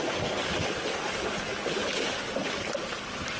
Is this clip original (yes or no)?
yes